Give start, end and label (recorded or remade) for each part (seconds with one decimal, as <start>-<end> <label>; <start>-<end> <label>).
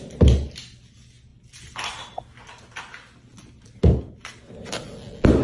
0.0-5.4 recorded